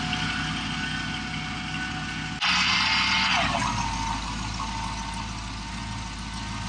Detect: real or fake real